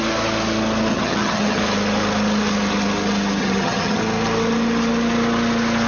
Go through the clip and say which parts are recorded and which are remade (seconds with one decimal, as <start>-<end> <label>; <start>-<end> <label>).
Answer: 0.0-0.9 recorded; 0.9-1.6 remade; 1.6-3.4 recorded; 3.4-4.0 remade; 4.0-5.9 recorded